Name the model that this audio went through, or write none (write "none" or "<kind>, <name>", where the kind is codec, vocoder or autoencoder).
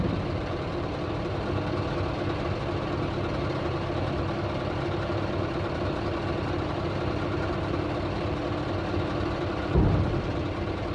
none